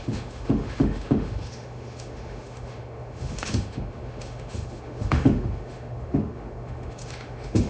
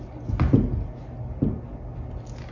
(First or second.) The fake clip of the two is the first